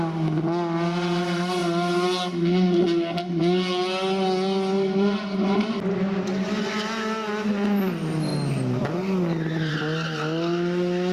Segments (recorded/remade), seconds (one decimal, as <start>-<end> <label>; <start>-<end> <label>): 0.0-11.1 recorded

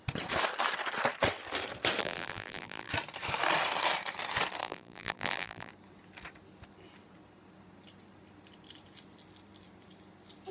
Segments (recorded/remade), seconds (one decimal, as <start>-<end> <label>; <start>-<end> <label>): 0.0-2.0 recorded; 2.0-2.9 remade; 2.9-4.6 recorded; 4.6-5.7 remade; 5.7-10.5 recorded

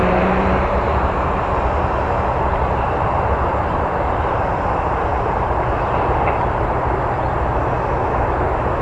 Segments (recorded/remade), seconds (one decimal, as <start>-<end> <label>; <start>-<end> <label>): 0.0-4.5 remade; 4.5-5.1 recorded; 5.1-7.0 remade; 7.0-8.8 recorded